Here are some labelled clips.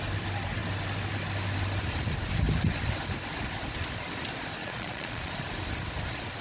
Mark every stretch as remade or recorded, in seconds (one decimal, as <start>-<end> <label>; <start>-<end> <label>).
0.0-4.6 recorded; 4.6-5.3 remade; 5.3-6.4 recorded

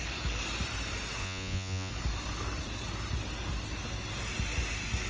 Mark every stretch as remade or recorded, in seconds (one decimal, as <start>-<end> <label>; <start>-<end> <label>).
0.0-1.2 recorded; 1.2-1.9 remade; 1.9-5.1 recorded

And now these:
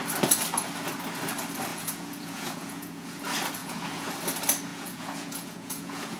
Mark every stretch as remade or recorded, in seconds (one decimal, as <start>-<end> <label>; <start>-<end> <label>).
0.0-1.7 recorded; 1.7-3.2 remade; 3.2-3.6 recorded; 3.6-4.1 remade; 4.1-4.7 recorded; 4.7-6.2 remade